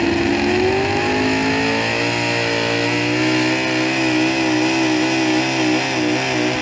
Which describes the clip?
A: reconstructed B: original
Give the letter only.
B